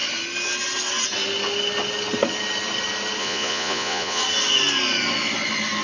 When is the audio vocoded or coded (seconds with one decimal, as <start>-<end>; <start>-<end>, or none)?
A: 3.2-4.2